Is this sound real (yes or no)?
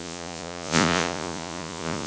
no